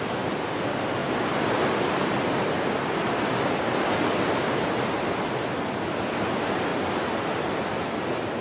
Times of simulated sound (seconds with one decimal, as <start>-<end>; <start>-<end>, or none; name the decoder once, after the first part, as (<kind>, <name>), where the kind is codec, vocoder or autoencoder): none